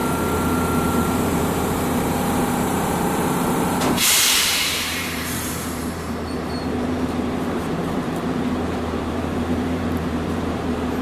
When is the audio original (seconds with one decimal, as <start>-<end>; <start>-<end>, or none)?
0.0-0.9

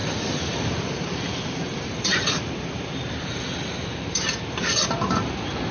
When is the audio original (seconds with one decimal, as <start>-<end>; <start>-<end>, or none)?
3.4-5.7

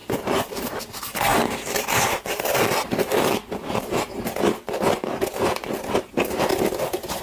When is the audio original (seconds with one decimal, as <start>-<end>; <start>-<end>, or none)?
0.8-1.3; 3.8-7.2

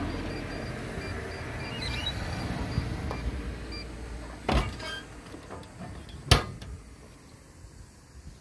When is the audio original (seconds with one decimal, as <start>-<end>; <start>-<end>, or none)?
0.0-2.0; 2.6-8.4

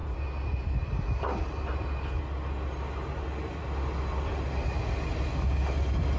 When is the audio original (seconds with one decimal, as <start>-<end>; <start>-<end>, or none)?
0.0-6.2